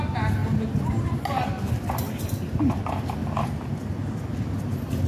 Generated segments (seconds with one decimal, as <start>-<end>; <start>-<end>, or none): none